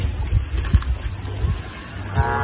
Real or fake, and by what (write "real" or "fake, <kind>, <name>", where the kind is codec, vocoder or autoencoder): real